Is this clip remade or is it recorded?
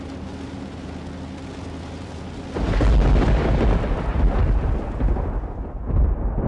recorded